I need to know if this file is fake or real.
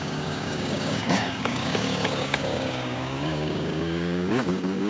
fake